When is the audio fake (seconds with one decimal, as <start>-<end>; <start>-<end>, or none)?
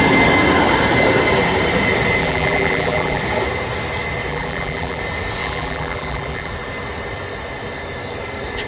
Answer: 2.2-3.2; 4.3-5.0; 5.4-6.5